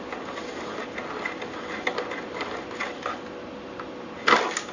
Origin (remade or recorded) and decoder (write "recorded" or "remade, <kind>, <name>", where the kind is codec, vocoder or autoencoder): recorded